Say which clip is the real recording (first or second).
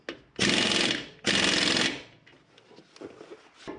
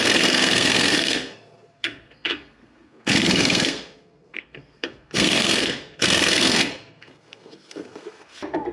first